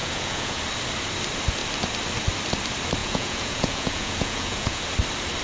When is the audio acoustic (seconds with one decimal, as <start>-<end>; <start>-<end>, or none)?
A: 0.6-3.0; 4.8-5.4